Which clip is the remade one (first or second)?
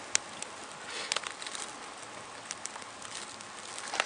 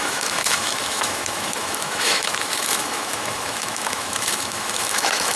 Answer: second